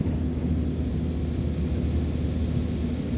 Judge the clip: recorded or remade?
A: recorded